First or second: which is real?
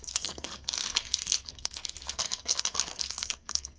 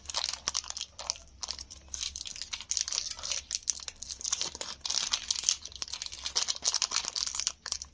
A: second